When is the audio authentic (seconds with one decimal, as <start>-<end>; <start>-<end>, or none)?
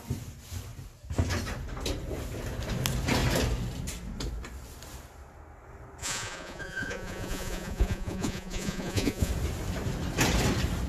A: 0.0-6.0; 9.3-10.9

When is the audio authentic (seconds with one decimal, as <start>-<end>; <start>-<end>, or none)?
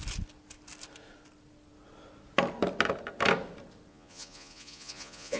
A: 0.0-3.9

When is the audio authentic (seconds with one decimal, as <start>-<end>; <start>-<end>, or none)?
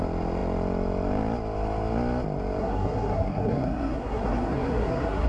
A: 0.0-2.6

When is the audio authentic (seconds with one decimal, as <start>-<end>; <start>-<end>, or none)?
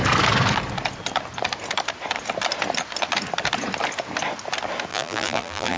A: 0.0-4.9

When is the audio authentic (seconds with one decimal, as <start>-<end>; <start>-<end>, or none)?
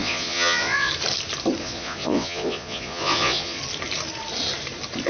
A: 0.9-1.6; 3.6-5.1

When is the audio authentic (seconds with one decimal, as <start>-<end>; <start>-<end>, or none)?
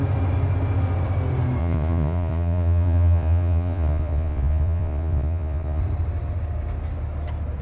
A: 0.0-1.6; 5.8-7.6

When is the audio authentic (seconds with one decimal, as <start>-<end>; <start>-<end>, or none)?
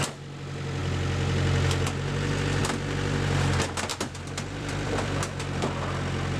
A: 0.0-3.9; 5.4-6.4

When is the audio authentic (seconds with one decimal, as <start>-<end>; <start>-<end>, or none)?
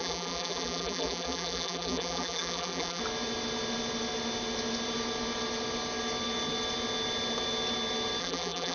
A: 3.0-8.2